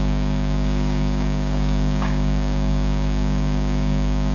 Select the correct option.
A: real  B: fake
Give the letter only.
B